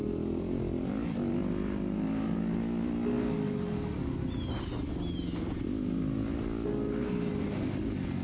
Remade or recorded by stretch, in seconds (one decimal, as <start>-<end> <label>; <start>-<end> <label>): 0.0-8.2 recorded